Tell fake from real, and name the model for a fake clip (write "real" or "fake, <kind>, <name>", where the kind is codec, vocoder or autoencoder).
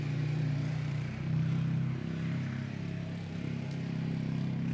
fake, vocoder, BigVGAN v2